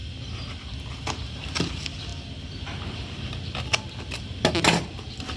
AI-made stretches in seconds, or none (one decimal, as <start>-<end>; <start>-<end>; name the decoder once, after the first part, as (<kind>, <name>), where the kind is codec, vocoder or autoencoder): none